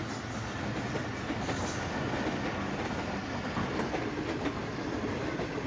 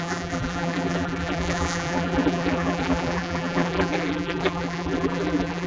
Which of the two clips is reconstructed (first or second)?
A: second